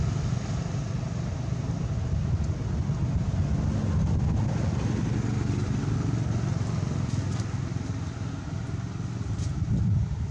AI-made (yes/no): no